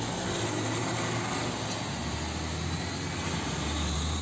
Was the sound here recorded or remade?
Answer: recorded